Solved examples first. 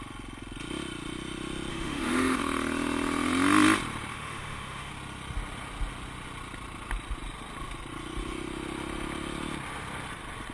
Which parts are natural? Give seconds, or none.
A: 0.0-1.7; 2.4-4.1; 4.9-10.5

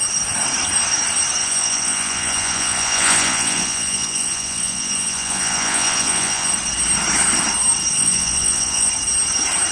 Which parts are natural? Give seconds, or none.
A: 0.0-1.4; 6.5-8.0; 8.9-9.7

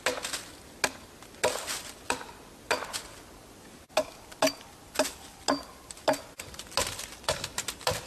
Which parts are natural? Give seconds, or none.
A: 0.0-8.1